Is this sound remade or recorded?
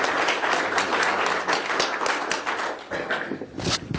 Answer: recorded